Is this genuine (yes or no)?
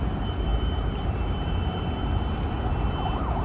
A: no